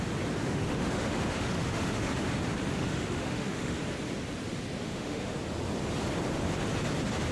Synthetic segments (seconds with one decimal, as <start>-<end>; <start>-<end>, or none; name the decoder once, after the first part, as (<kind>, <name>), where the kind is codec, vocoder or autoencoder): 0.4-2.1 (autoencoder, DAC-VAE); 2.7-3.8; 4.8-5.4